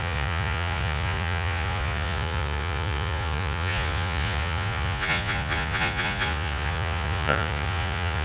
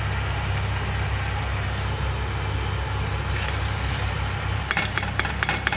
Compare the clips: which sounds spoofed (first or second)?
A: first